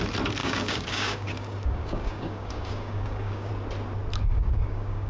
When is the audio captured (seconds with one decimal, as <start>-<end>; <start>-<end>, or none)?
0.0-0.4; 3.5-4.1